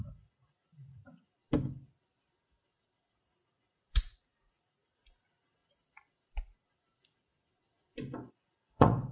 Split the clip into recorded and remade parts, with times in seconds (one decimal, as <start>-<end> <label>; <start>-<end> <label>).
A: 0.0-1.4 remade; 1.4-3.2 recorded; 3.2-5.6 remade; 5.6-8.3 recorded; 8.3-9.1 remade